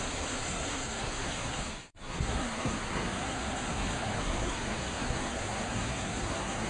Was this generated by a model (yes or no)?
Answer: yes